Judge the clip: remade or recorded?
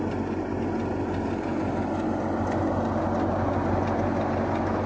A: recorded